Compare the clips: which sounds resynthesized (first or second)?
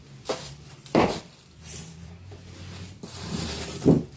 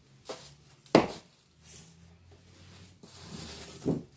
first